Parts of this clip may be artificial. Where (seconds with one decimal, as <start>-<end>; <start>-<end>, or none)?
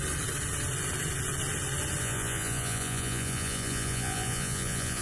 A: 2.0-5.0